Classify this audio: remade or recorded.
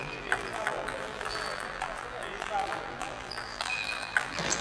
remade